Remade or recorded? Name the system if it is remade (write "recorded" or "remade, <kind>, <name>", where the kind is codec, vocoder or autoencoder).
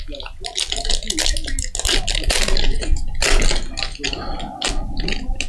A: recorded